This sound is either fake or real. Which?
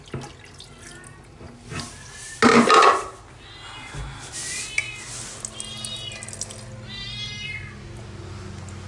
real